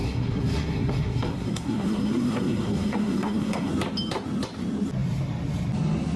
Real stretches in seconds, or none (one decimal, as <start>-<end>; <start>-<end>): 3.7-6.2